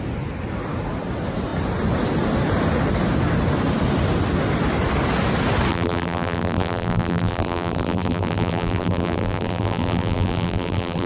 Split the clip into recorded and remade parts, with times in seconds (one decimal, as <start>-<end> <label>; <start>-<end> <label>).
0.0-5.7 recorded; 5.7-11.1 remade